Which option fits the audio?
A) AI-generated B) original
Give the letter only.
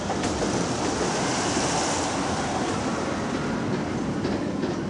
B